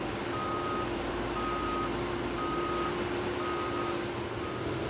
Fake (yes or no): no